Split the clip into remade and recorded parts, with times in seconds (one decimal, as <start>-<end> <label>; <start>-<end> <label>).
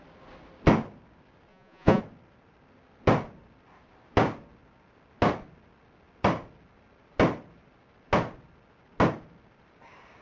0.0-1.5 recorded; 1.5-2.0 remade; 2.0-10.2 recorded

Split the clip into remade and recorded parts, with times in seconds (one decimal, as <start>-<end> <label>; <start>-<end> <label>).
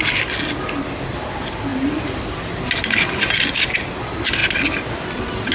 0.0-1.7 recorded; 1.7-2.4 remade; 2.4-5.5 recorded